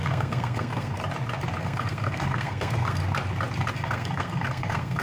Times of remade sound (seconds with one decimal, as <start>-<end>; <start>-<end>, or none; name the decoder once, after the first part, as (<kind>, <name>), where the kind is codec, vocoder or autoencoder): 0.0-1.0 (codec, SNAC); 1.6-3.0; 3.7-5.0

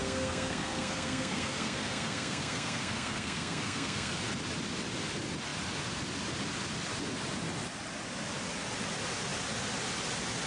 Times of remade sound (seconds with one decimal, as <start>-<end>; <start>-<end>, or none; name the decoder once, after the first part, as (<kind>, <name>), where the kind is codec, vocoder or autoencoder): 0.0-4.1 (codec, SNAC)

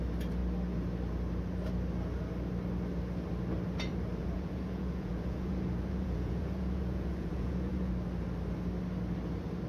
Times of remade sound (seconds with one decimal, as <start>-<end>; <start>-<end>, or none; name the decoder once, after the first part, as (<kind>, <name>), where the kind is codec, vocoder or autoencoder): 4.2-7.9 (vocoder, Vocos)

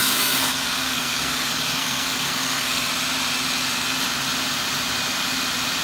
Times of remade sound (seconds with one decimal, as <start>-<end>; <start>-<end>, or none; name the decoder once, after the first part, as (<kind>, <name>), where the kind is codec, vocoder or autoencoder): 0.0-2.9 (codec, SNAC)

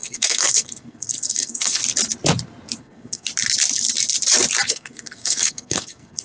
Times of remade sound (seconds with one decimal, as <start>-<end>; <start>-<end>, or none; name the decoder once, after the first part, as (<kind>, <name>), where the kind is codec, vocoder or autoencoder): 0.0-1.8 (codec, SNAC); 2.8-3.3; 4.7-6.2

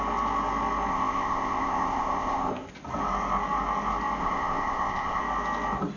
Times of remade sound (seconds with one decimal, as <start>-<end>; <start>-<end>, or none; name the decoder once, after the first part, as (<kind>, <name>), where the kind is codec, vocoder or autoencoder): 0.9-2.7 (codec, ZipCodec); 4.2-5.2